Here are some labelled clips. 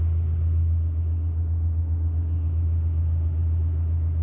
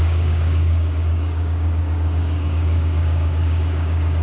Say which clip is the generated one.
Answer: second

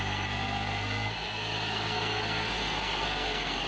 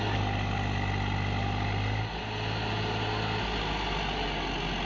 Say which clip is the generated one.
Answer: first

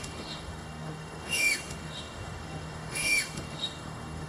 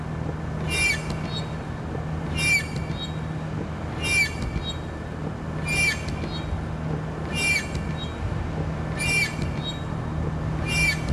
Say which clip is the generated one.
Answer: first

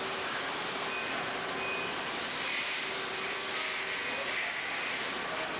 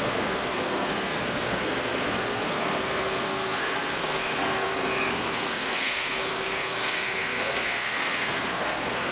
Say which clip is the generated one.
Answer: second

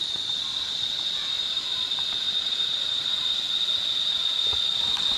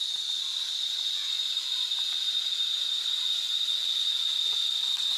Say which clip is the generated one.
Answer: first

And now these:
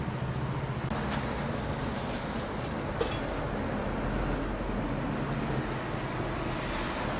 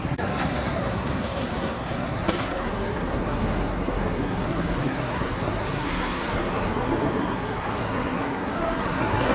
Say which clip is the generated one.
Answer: second